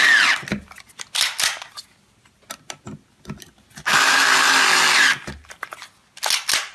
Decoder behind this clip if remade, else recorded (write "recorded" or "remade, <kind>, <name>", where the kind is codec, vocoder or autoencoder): recorded